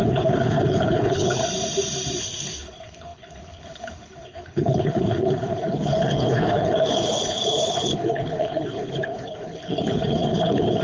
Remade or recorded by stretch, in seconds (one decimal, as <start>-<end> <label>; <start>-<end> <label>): 0.0-1.4 remade; 1.4-2.2 recorded; 2.2-10.8 remade